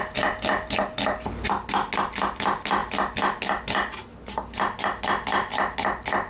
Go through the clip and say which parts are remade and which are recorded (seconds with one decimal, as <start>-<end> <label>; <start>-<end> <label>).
0.0-6.3 recorded